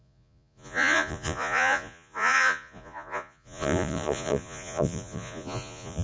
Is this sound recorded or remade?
remade